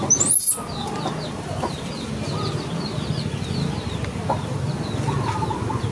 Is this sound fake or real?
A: real